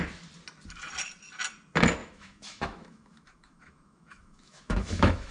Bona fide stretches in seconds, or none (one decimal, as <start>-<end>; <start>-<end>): 0.0-2.0